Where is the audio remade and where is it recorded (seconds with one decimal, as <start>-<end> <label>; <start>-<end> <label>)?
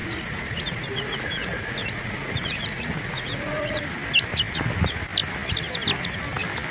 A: 0.0-3.8 remade; 3.8-6.7 recorded